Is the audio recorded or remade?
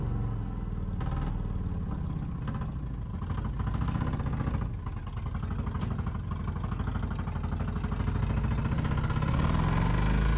recorded